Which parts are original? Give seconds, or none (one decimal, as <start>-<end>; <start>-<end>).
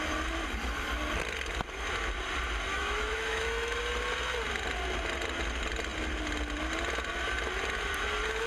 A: 0.0-2.7; 3.8-8.5